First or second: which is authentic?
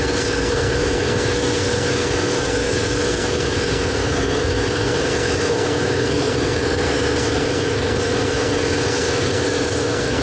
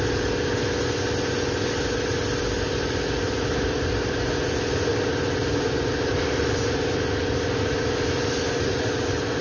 second